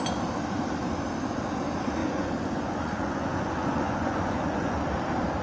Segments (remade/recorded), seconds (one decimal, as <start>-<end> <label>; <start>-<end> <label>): 0.0-2.0 recorded; 2.0-4.8 remade; 4.8-5.4 recorded